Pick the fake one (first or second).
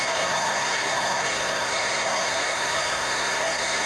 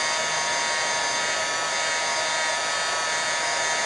first